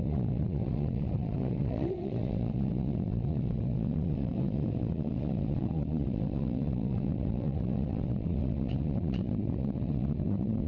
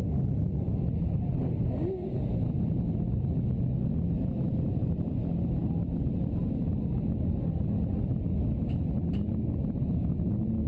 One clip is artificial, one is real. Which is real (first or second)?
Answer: second